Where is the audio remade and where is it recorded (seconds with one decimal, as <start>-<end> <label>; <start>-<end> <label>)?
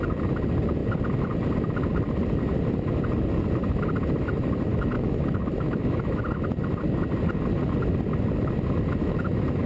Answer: 0.0-4.7 recorded; 4.7-6.2 remade; 6.2-9.0 recorded; 9.0-9.7 remade